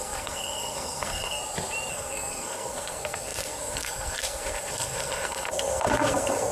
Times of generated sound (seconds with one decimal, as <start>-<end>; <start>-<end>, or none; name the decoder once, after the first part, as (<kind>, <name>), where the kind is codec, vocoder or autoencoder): 0.0-1.4 (codec, SNAC); 1.9-6.5